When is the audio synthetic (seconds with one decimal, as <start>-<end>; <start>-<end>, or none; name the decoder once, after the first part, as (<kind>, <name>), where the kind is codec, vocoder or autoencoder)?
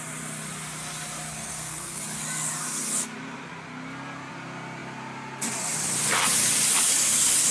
1.3-2.0 (codec, SNAC)